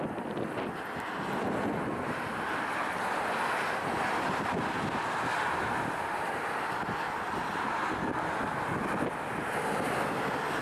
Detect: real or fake real